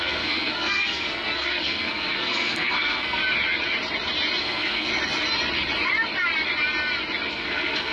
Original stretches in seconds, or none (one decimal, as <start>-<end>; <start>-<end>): 3.2-4.4; 4.9-7.3